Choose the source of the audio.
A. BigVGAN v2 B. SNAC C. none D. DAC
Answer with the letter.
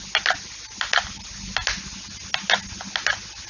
C